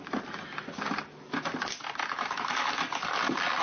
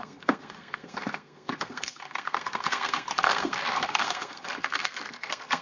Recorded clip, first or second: first